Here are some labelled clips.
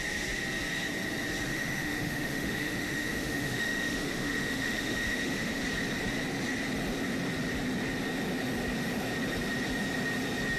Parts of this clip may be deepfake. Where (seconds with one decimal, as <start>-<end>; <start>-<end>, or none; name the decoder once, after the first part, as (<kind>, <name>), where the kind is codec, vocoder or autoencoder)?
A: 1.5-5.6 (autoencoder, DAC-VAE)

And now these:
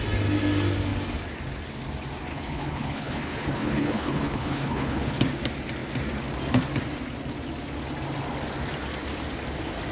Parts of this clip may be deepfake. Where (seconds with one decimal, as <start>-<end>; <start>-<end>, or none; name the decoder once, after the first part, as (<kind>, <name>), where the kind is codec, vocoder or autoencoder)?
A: 2.3-5.2 (codec, HILCodec)

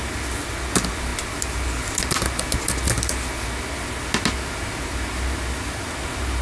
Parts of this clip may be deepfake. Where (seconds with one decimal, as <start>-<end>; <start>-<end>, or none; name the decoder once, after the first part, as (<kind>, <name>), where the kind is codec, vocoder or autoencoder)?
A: none

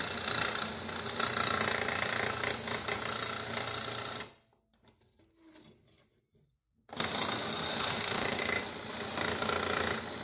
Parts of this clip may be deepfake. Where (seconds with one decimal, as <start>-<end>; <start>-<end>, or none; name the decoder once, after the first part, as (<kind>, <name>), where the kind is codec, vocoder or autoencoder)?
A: 7.7-8.4 (autoencoder, DAC-VAE)

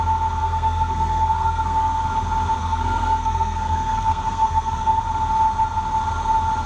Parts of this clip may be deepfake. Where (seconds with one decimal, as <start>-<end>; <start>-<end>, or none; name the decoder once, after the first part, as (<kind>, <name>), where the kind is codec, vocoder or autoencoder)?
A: 0.4-2.1 (codec, SNAC); 2.6-5.0

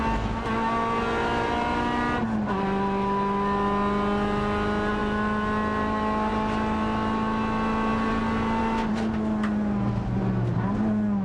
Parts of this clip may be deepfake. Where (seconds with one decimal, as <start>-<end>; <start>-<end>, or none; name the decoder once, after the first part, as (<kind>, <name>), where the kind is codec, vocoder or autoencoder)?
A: none